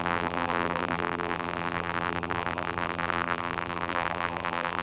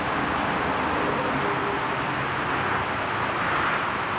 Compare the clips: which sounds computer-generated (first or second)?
first